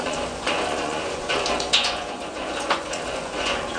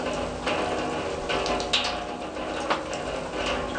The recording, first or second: second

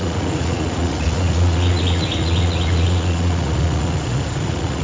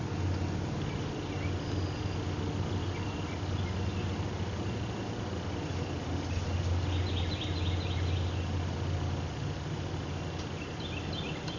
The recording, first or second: second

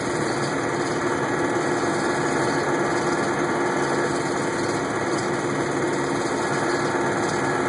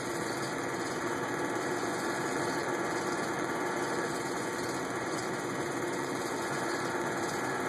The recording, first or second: first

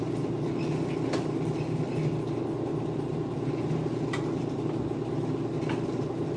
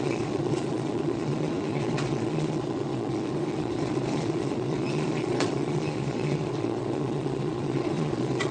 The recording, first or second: first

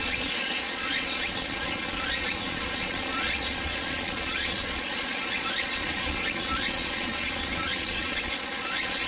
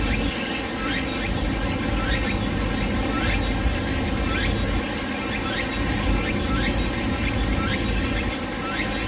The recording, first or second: second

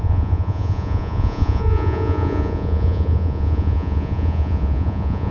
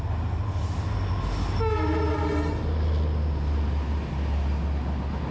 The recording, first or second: second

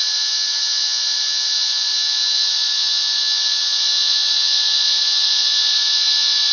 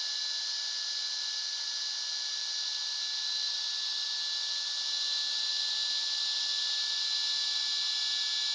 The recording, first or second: second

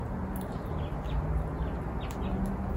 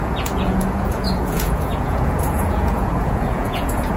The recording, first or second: first